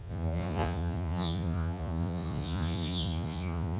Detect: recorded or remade remade